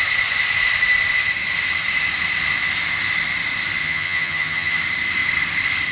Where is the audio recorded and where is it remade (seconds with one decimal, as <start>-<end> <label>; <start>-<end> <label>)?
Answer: 0.0-3.8 recorded; 3.8-4.8 remade; 4.8-5.9 recorded